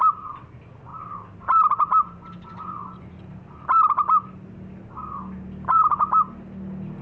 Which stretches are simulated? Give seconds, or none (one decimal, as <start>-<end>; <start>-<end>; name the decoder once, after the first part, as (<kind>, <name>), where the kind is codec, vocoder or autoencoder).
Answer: none